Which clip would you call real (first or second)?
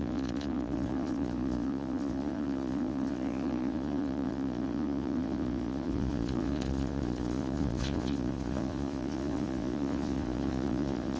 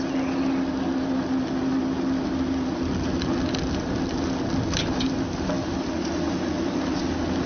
second